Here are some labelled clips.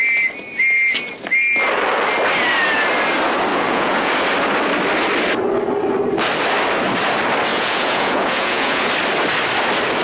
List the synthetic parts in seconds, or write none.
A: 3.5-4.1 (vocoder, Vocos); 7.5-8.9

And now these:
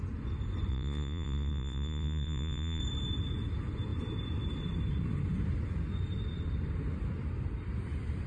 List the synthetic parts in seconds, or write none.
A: 0.7-2.8 (vocoder, Vocos)

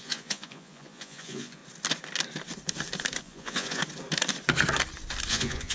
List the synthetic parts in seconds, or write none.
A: 0.0-1.6 (vocoder, Vocos); 3.2-3.8; 5.3-5.7

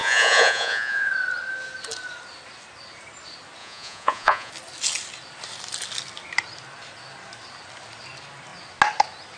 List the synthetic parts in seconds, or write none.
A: 0.0-1.1 (vocoder, Vocos); 3.6-4.5

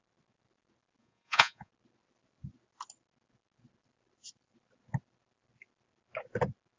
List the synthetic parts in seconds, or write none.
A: 1.0-1.7 (vocoder, Vocos)

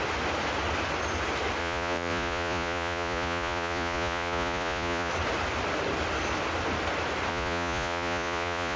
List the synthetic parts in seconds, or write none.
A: 1.6-5.1 (vocoder, Vocos); 7.3-8.8

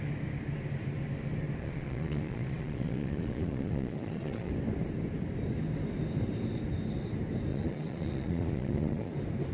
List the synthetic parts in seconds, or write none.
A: 1.6-4.5 (vocoder, Vocos); 7.5-9.1

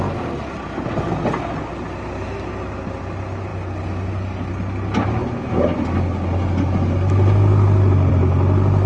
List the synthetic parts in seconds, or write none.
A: none